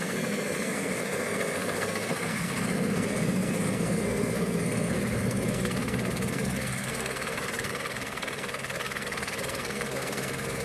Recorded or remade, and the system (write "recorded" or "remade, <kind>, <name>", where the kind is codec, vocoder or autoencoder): remade, codec, SNAC